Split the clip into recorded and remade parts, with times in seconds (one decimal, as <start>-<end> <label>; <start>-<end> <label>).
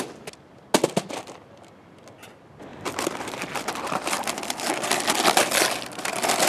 0.0-2.7 recorded; 2.7-3.6 remade; 3.6-6.5 recorded